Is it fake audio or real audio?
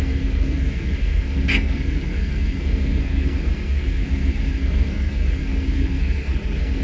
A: fake